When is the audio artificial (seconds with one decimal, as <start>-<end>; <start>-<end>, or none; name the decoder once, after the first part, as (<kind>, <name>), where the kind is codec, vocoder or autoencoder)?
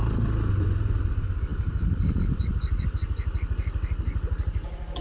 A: none